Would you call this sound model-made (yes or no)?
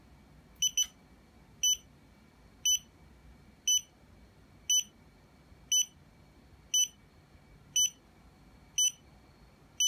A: no